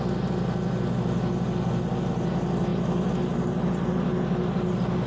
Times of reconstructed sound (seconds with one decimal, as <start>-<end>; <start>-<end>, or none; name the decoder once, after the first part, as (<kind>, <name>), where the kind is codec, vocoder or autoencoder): none